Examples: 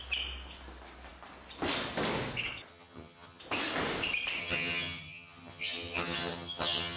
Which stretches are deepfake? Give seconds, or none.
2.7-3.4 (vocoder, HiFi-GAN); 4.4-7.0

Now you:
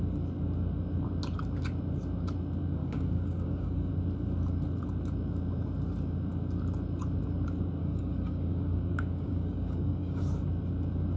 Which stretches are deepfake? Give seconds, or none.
2.8-3.9 (codec, DAC); 7.8-10.2

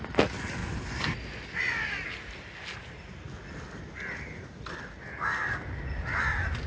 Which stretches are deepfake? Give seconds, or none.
none

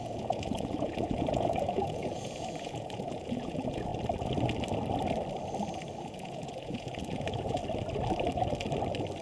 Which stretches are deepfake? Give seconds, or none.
0.0-3.9 (vocoder, Vocos); 6.0-7.6

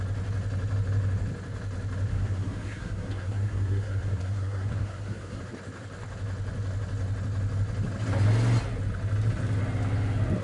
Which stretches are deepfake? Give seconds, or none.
2.1-5.4 (codec, SNAC)